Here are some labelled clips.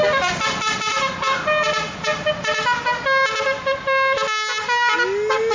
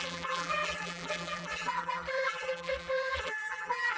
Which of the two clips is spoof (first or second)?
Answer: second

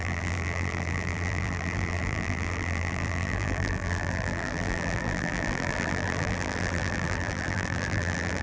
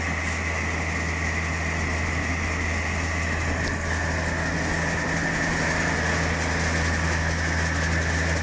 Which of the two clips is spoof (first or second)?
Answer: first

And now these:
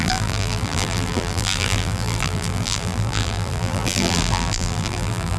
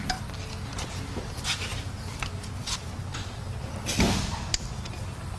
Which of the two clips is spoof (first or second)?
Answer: first